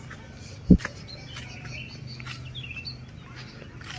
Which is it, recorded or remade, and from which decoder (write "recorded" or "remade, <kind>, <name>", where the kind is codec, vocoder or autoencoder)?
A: recorded